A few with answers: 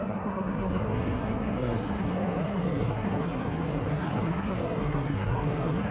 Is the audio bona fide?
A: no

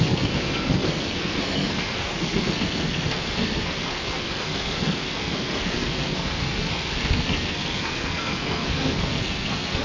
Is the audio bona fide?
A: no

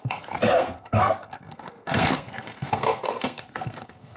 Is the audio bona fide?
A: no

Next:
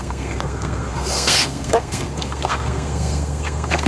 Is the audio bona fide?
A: no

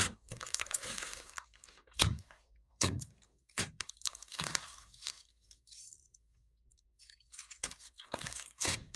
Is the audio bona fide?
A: no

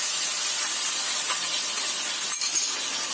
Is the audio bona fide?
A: yes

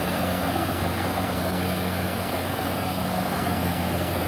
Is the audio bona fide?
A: no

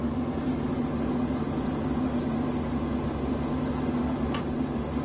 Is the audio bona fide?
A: yes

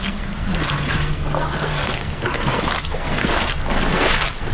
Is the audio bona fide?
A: no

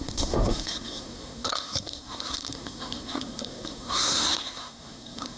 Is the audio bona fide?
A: no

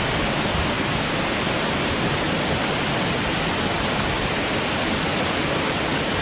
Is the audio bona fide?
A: yes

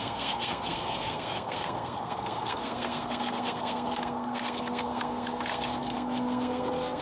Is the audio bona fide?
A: no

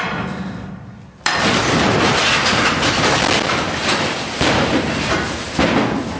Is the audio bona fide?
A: yes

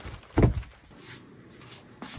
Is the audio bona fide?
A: yes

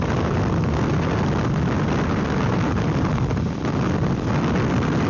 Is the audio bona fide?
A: yes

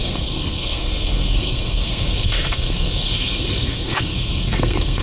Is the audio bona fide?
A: no